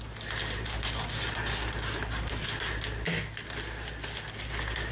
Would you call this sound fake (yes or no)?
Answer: no